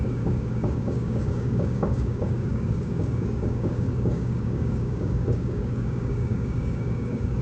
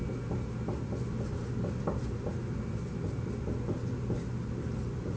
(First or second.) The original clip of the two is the second